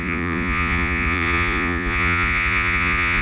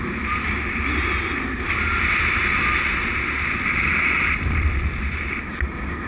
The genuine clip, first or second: second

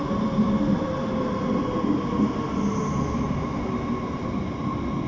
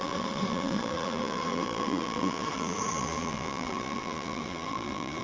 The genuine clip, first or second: first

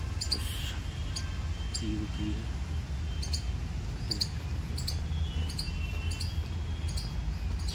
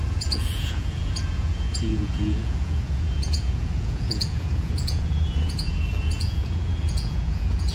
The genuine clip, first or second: first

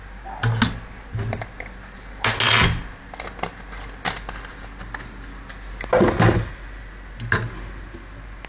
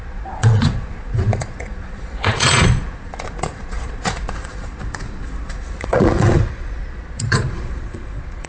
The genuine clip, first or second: first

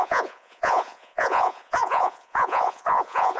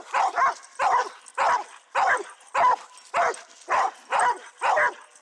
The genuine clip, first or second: second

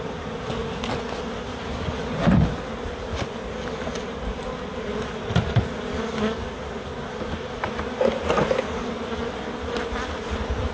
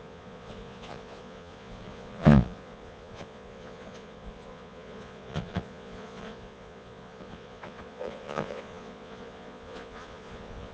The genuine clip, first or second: first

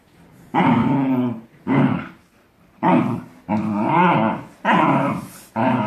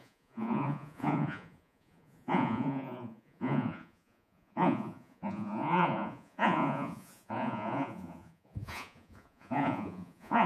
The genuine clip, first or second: first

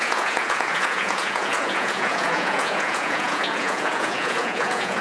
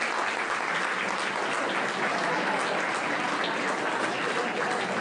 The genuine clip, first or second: second